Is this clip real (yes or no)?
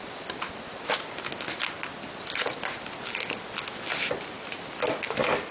yes